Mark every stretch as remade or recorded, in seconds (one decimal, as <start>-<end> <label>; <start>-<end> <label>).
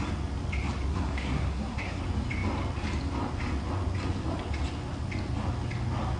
0.0-0.9 recorded; 0.9-2.0 remade; 2.0-6.2 recorded